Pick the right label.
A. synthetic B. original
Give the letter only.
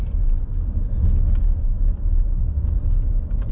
B